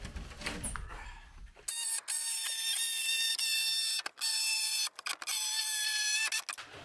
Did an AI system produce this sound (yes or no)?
no